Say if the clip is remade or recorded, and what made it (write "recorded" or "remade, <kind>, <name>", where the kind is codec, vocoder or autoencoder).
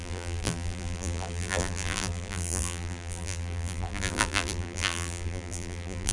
remade, vocoder, BigVGAN v2